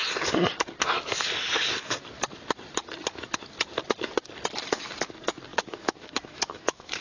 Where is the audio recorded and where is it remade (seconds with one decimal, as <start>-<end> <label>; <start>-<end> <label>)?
0.0-5.5 recorded; 5.5-7.0 remade